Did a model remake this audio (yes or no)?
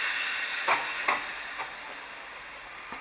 no